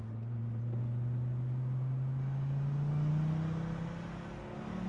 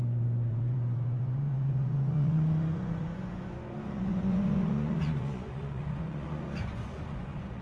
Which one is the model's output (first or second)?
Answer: second